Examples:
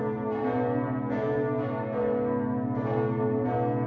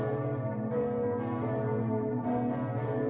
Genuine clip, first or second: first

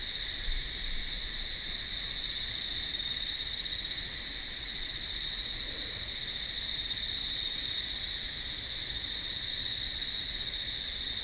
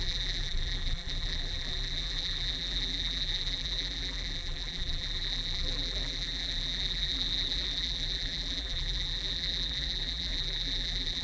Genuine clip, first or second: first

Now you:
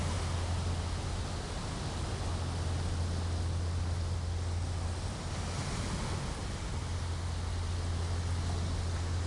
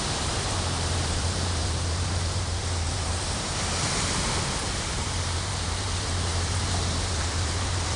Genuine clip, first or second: first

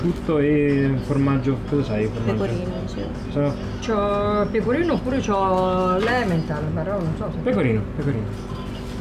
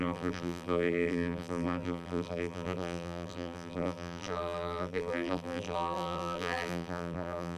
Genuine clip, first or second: first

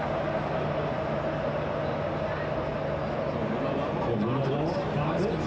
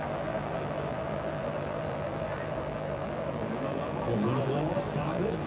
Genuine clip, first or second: first